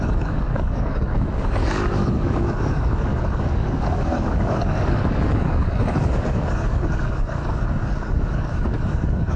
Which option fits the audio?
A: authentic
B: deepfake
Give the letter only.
B